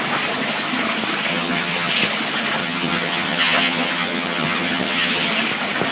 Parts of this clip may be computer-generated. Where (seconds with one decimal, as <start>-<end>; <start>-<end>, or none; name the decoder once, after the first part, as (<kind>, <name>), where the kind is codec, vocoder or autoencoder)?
1.3-1.9 (vocoder, HiFi-GAN); 2.6-5.3